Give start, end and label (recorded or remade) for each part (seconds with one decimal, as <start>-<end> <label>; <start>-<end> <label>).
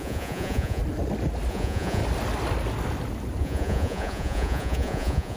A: 0.0-0.8 remade; 0.8-1.5 recorded; 1.5-2.0 remade; 2.0-3.4 recorded; 3.4-5.4 remade